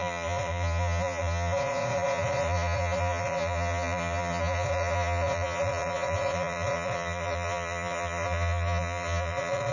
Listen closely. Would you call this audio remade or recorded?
remade